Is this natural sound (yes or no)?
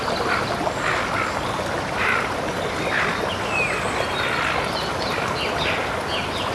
yes